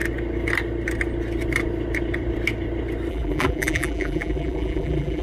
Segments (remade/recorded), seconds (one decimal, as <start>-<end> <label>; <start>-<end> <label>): 0.0-3.1 recorded; 3.1-5.2 remade